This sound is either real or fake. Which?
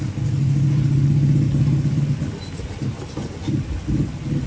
real